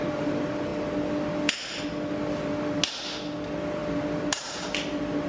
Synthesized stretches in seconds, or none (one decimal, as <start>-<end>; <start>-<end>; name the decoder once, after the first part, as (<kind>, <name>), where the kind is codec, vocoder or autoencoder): none